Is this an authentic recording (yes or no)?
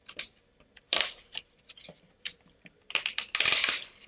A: no